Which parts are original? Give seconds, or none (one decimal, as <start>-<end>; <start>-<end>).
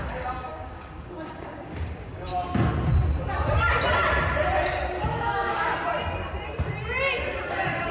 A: 2.3-5.1; 5.7-7.5